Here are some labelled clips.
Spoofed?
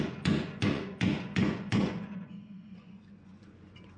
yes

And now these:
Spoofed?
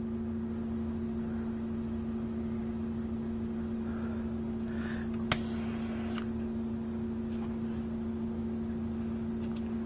no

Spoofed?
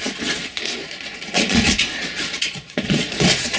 yes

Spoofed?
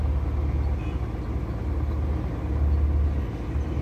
no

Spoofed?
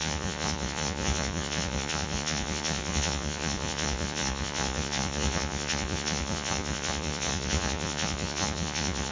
yes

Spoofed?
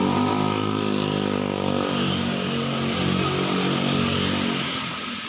no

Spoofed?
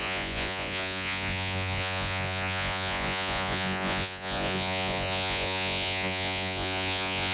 yes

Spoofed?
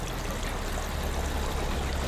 no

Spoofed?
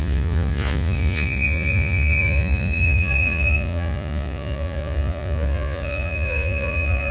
yes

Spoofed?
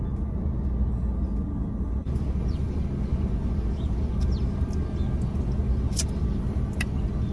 no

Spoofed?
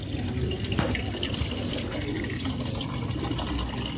no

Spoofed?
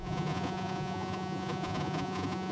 yes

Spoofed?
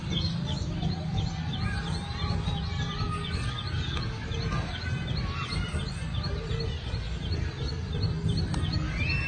no